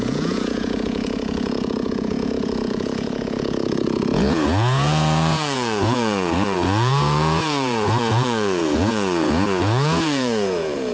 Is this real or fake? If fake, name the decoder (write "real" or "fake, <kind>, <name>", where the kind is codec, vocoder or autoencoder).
fake, vocoder, Vocos